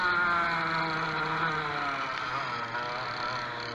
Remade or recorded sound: recorded